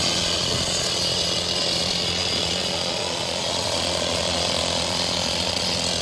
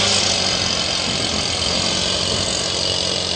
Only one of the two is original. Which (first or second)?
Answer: second